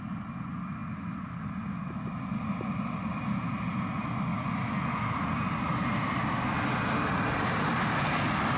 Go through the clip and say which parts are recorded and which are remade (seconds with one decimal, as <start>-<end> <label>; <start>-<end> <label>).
0.0-8.6 recorded

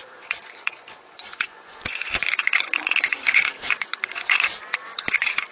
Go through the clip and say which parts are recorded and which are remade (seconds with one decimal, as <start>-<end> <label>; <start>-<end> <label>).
0.0-5.5 remade

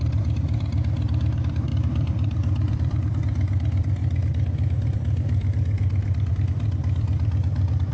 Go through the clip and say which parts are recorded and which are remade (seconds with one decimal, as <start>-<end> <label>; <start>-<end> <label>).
0.0-7.9 remade

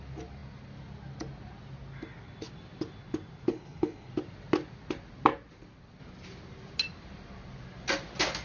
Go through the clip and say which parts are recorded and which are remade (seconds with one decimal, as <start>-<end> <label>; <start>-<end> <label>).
0.0-3.5 recorded; 3.5-4.1 remade; 4.1-8.4 recorded

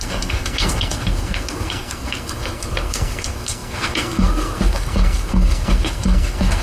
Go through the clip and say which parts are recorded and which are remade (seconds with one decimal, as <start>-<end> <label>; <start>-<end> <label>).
0.0-6.6 remade

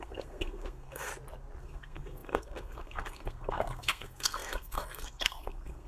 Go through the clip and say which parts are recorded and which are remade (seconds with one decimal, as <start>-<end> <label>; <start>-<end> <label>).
0.0-1.1 remade; 1.1-1.6 recorded; 1.6-5.9 remade